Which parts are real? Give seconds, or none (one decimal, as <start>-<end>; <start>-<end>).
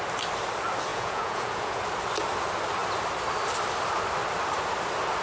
0.0-0.9; 1.8-5.2